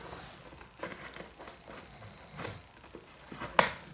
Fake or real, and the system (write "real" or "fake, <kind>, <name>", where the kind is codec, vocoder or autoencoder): real